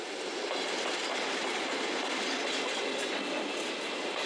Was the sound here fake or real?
real